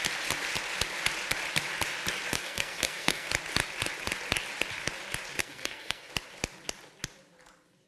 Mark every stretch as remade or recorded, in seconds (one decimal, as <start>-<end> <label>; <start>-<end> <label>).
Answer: 0.0-2.3 recorded; 2.3-3.3 remade; 3.3-5.4 recorded; 5.4-6.1 remade; 6.1-7.9 recorded